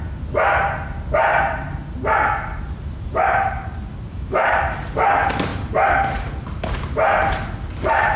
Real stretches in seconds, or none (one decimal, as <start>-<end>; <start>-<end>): 0.0-4.1; 4.6-8.2